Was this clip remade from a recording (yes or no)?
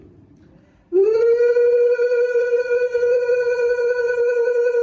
no